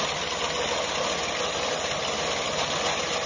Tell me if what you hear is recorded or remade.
recorded